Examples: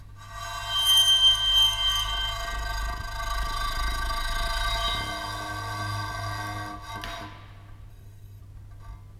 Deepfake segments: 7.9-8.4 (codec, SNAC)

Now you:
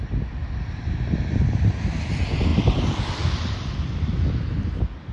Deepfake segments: none